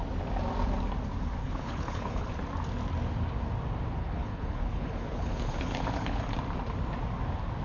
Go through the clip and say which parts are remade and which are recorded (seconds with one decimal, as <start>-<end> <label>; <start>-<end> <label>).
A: 0.0-1.4 recorded; 1.4-2.3 remade; 2.3-4.0 recorded; 4.0-6.2 remade; 6.2-7.6 recorded